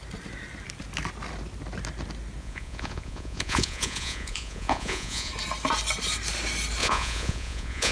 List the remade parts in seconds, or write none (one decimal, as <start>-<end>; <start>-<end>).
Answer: 2.4-5.3; 6.8-7.9